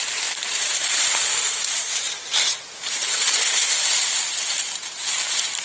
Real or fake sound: fake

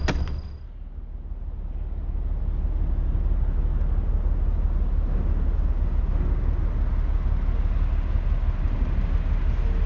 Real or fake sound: real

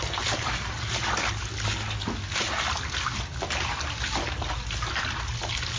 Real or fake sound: real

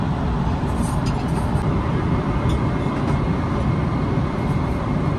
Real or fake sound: real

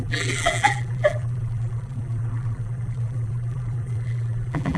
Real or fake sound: fake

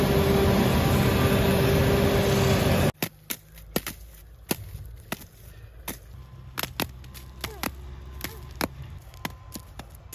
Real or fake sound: real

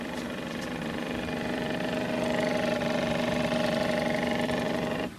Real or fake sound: fake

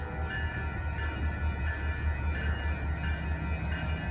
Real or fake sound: real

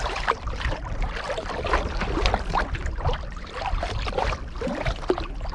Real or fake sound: fake